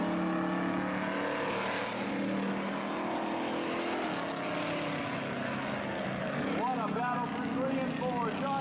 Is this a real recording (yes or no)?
yes